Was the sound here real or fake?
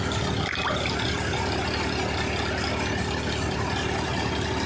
real